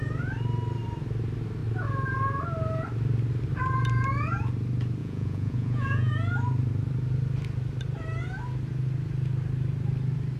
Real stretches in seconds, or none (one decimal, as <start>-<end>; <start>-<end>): 0.0-5.0; 6.1-10.4